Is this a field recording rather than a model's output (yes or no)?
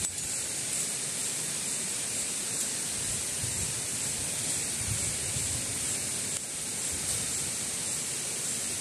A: yes